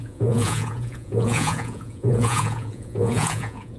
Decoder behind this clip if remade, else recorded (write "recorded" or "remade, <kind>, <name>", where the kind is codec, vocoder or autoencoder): remade, vocoder, Vocos